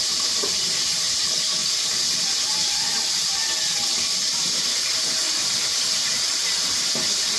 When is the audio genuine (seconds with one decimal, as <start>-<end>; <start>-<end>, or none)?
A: 1.6-2.1; 3.4-4.2